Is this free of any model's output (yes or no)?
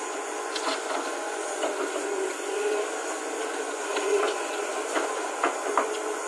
no